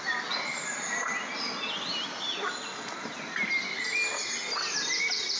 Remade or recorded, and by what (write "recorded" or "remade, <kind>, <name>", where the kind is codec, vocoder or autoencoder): recorded